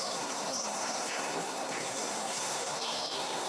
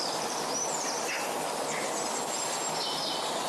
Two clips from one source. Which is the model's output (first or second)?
first